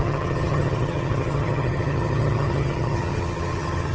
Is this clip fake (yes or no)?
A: yes